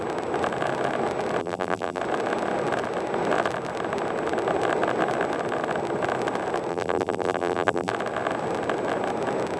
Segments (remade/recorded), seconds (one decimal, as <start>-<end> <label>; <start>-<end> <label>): 0.0-1.4 recorded; 1.4-2.0 remade; 2.0-6.7 recorded; 6.7-7.9 remade; 7.9-9.6 recorded